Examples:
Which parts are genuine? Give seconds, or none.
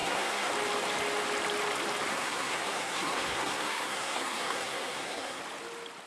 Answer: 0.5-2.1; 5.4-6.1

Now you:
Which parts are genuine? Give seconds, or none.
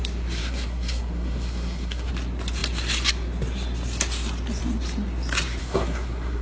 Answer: 0.0-0.4; 2.1-5.6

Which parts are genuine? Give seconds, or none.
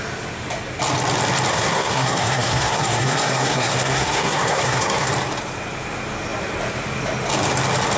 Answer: 0.0-1.5; 5.1-8.0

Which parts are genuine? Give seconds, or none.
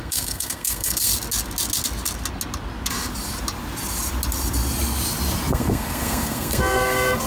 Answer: 1.1-5.5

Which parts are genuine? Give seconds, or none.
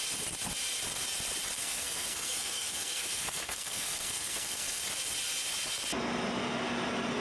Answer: 0.0-1.6; 4.8-7.2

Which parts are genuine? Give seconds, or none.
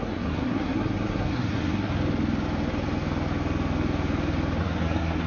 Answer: 1.9-4.6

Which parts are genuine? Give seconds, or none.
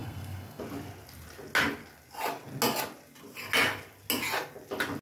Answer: 0.6-5.0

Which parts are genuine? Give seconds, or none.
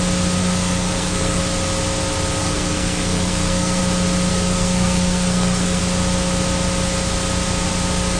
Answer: 0.0-0.4; 1.4-2.4; 3.8-4.3; 5.8-8.2